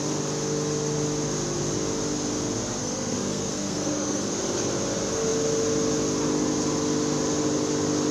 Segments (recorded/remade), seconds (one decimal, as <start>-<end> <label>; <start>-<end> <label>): 0.0-2.8 recorded; 2.8-4.4 remade; 4.4-8.1 recorded